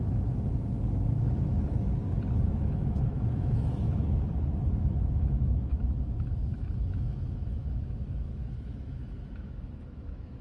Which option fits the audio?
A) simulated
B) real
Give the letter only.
A